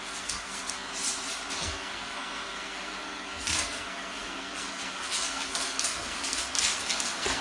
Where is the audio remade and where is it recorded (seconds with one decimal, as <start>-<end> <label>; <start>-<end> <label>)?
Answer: 0.0-0.9 remade; 0.9-1.6 recorded; 1.6-7.4 remade